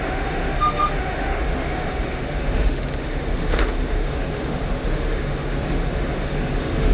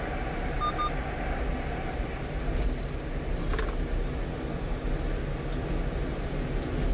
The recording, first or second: second